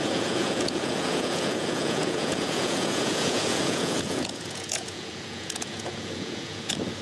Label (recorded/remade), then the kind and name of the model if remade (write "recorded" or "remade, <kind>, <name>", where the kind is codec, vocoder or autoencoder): remade, vocoder, Vocos